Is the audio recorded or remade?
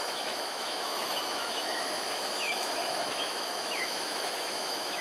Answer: remade